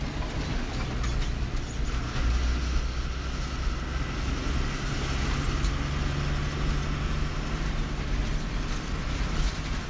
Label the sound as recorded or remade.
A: recorded